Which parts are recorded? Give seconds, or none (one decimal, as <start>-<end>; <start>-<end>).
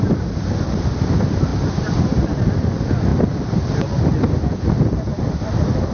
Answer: 0.0-5.9